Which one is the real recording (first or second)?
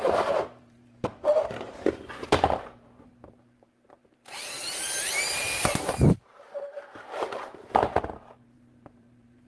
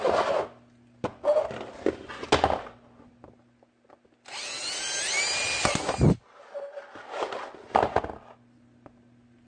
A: second